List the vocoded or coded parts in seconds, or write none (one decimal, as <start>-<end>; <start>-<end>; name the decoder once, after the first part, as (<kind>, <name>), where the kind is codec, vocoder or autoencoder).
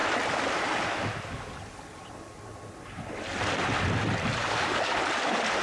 4.4-5.0 (codec, DAC)